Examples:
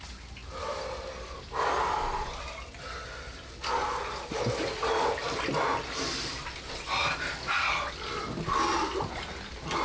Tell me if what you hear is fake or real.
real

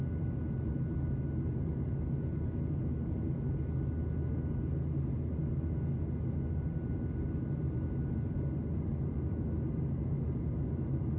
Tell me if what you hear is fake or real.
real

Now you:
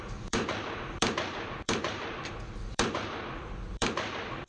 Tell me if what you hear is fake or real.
fake